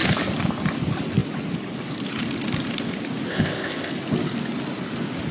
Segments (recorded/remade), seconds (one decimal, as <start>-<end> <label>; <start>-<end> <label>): 0.0-3.3 recorded; 3.3-3.9 remade; 3.9-5.3 recorded